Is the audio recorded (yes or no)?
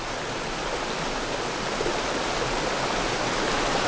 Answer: yes